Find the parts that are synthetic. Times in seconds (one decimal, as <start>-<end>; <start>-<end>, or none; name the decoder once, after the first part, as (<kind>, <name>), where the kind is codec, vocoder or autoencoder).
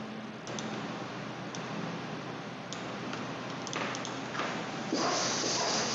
none